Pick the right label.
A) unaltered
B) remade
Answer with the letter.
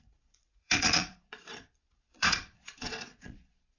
B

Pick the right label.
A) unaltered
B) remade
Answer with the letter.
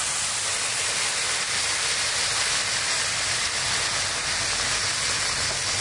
A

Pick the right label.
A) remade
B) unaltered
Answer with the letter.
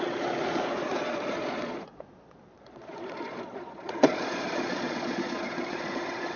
A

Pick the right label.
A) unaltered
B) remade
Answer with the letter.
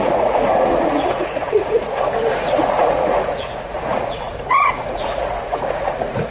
B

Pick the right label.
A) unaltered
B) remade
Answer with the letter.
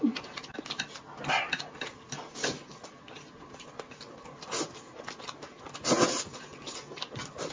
A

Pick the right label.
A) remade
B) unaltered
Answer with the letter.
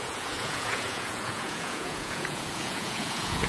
A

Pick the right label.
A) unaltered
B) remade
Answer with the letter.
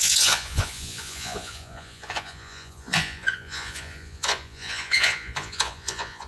B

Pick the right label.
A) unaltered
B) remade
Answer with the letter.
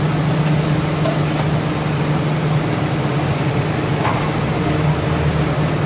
A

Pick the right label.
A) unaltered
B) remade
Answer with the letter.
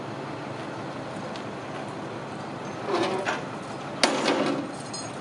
A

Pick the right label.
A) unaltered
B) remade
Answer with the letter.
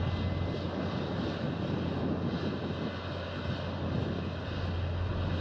A